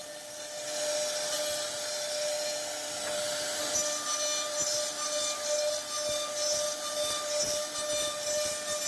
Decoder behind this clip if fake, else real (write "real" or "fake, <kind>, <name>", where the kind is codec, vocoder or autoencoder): real